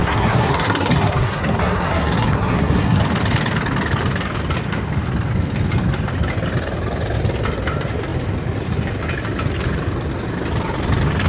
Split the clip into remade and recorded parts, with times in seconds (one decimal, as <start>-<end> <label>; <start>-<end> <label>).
0.0-3.0 remade; 3.0-11.3 recorded